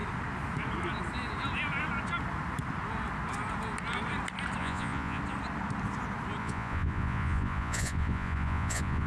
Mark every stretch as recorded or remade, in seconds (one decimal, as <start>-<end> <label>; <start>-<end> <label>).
0.0-4.6 recorded; 4.6-5.2 remade; 5.2-6.4 recorded; 6.4-9.1 remade